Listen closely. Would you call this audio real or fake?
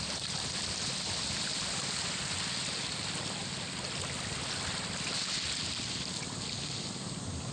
real